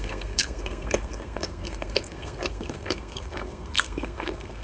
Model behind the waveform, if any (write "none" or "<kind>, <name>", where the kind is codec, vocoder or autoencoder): codec, SNAC